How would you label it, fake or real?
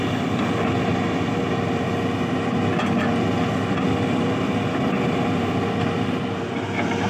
real